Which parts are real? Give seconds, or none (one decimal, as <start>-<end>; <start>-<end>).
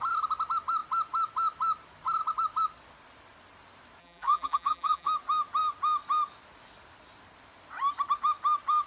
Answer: 0.0-4.0; 5.1-8.9